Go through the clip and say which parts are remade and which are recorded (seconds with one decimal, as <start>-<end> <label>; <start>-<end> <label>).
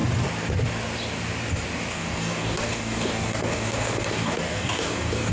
0.0-1.9 recorded; 1.9-5.3 remade